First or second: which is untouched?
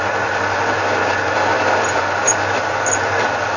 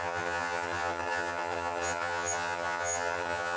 first